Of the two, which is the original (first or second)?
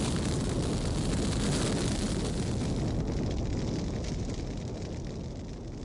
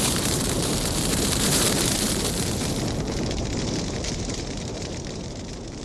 first